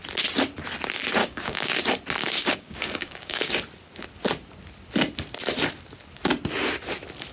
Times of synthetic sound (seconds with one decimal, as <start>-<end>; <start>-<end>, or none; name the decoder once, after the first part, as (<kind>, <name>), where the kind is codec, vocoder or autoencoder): 1.2-1.8 (codec, DAC); 2.2-3.5